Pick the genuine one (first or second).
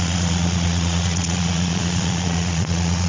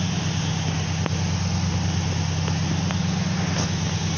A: second